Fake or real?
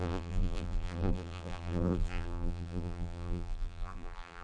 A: fake